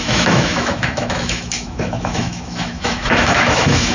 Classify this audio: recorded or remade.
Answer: remade